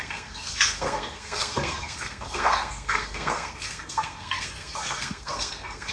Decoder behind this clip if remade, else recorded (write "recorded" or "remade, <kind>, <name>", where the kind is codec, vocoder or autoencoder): remade, codec, SNAC